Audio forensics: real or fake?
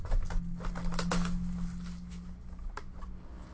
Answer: real